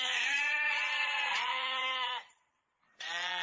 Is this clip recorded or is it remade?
remade